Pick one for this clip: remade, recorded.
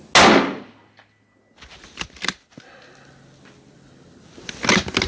recorded